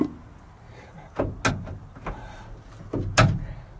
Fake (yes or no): no